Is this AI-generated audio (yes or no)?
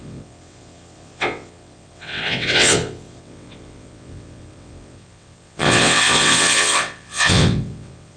yes